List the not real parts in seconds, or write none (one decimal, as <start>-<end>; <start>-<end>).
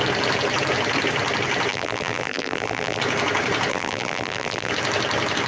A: 1.7-3.0; 3.7-4.7